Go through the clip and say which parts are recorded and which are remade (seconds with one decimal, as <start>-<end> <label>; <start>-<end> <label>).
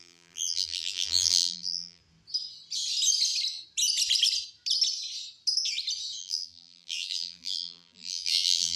0.0-2.0 remade; 2.0-6.2 recorded; 6.2-8.8 remade